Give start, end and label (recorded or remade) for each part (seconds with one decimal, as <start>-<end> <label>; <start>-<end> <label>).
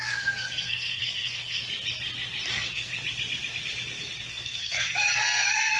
0.0-1.6 remade; 1.6-2.5 recorded; 2.5-2.9 remade; 2.9-4.3 recorded; 4.3-5.8 remade